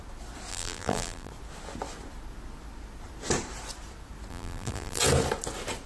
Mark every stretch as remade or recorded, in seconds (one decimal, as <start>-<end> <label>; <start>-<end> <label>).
0.0-0.5 recorded; 0.5-1.3 remade; 1.3-4.3 recorded; 4.3-5.0 remade; 5.0-5.9 recorded